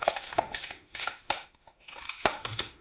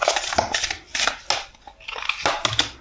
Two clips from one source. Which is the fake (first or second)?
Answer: first